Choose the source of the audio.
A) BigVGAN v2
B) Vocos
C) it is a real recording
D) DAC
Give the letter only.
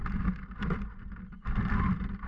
C